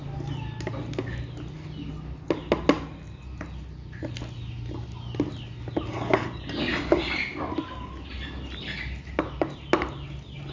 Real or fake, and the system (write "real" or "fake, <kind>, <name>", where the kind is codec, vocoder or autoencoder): real